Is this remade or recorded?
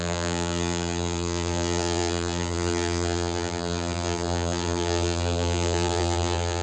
remade